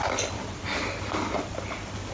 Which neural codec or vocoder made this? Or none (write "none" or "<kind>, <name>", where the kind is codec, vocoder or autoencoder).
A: none